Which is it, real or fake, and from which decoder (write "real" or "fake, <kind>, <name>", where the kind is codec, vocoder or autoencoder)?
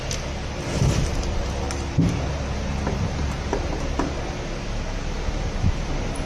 fake, vocoder, BigVGAN v2